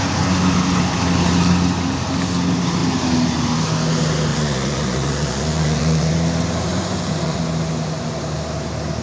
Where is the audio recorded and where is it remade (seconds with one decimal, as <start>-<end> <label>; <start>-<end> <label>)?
0.0-4.3 recorded; 4.3-6.1 remade; 6.1-6.7 recorded; 6.7-7.4 remade; 7.4-9.0 recorded